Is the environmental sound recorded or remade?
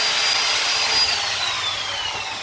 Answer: recorded